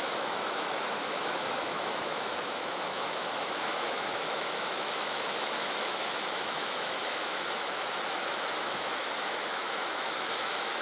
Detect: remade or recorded remade